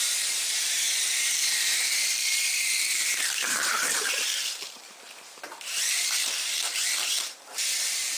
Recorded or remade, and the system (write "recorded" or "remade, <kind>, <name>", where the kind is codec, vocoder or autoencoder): remade, vocoder, BigVGAN v2